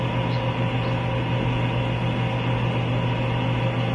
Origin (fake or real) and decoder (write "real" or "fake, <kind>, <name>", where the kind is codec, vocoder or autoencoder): real